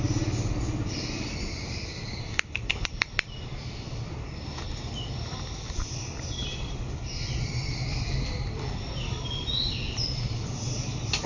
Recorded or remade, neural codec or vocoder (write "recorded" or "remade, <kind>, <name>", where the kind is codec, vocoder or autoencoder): remade, vocoder, BigVGAN v2